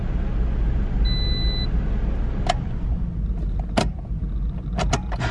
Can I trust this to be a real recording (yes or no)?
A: yes